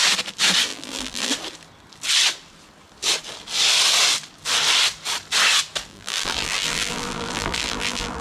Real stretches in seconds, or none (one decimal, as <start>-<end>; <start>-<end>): 0.0-0.7; 1.3-5.9